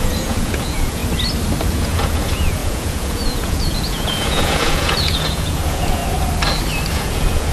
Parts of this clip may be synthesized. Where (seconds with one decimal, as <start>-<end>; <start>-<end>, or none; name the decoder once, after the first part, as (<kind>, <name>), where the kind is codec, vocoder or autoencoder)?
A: 0.0-1.0 (vocoder, Vocos); 1.7-6.0; 6.9-7.5